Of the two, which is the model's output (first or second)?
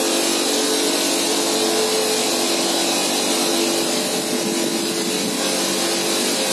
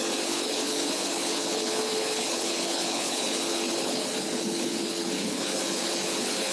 second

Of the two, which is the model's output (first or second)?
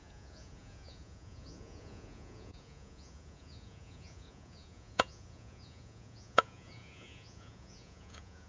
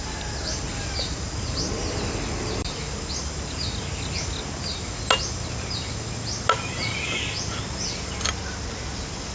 first